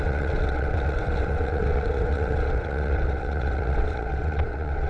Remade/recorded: remade